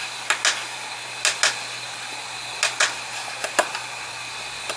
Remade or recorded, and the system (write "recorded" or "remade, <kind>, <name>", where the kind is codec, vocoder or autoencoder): recorded